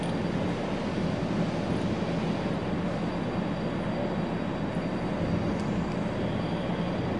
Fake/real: real